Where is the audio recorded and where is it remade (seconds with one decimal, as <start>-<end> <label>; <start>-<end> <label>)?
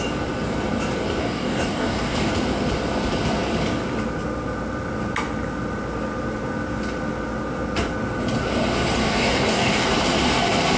0.0-1.2 recorded; 1.2-2.3 remade; 2.3-9.0 recorded; 9.0-9.9 remade; 9.9-10.8 recorded